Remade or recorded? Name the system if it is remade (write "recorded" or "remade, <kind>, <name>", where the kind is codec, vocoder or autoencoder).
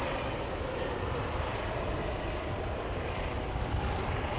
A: recorded